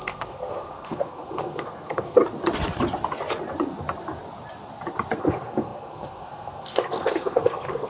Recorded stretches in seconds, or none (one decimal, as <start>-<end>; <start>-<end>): 2.2-5.2